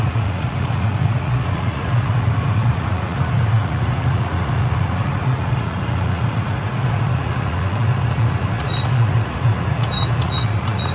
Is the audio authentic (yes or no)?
no